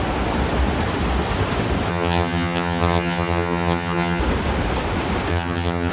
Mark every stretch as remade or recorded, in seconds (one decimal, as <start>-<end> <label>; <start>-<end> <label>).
0.0-1.9 recorded; 1.9-4.2 remade; 4.2-5.3 recorded; 5.3-5.9 remade

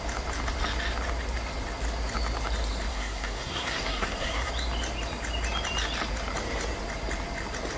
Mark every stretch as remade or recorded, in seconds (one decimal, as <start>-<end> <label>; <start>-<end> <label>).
0.0-2.9 recorded; 2.9-4.5 remade; 4.5-7.8 recorded

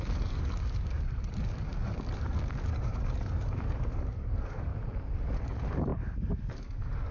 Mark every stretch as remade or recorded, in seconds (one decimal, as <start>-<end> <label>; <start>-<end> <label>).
0.0-4.7 remade; 4.7-5.4 recorded; 5.4-7.1 remade

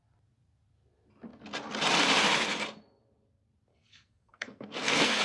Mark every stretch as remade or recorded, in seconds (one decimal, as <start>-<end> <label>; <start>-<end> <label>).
0.0-3.7 recorded; 3.7-5.2 remade

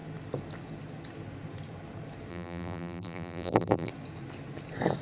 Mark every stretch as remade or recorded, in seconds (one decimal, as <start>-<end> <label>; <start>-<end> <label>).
0.0-2.3 recorded; 2.3-3.9 remade; 3.9-5.0 recorded

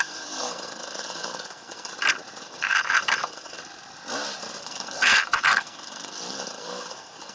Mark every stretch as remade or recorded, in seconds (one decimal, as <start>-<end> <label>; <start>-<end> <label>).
0.0-1.9 remade; 1.9-2.4 recorded; 2.4-3.6 remade; 3.6-4.6 recorded; 4.6-7.3 remade

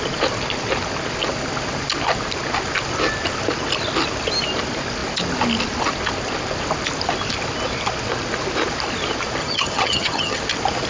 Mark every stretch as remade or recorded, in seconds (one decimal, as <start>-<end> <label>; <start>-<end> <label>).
0.0-9.4 recorded; 9.4-10.4 remade; 10.4-10.9 recorded